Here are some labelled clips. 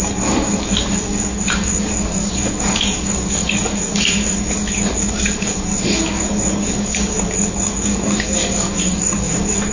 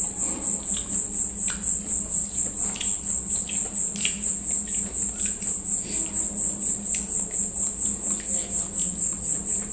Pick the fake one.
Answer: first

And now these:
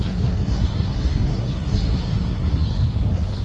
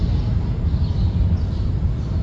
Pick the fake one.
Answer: first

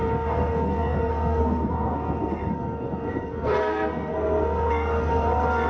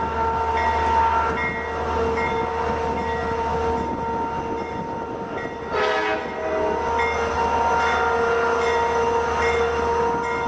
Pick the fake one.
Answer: first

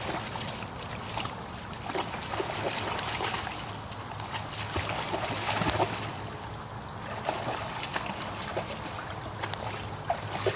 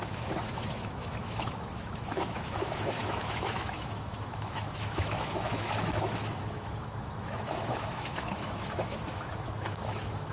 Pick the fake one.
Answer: second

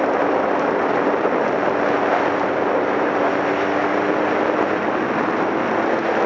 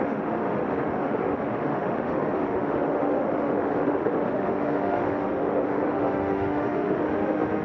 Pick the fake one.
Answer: second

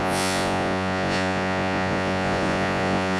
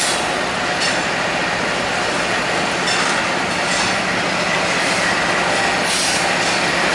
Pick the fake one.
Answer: first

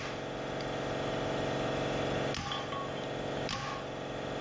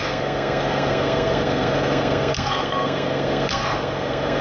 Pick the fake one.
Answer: second